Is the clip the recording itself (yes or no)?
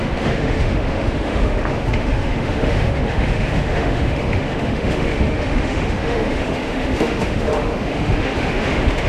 no